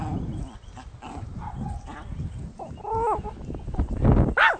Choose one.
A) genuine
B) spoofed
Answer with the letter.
A